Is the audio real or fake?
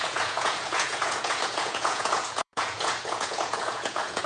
fake